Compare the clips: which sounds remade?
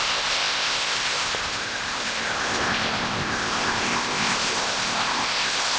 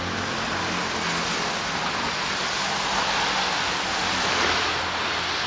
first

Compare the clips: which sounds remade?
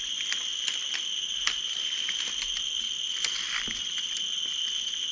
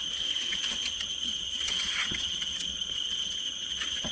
second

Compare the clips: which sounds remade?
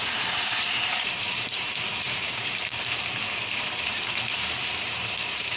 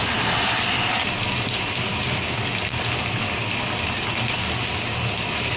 first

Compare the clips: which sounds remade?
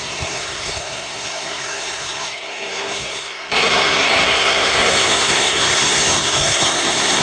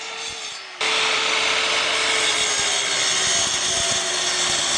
first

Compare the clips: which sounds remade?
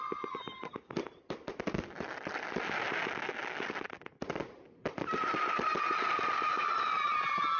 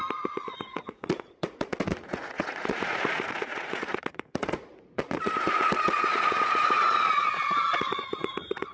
second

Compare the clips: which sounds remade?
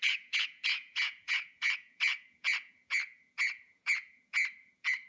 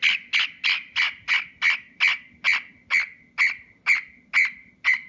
first